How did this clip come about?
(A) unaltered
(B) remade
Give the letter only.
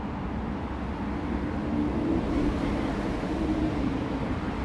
A